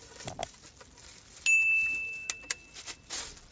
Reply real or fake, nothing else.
real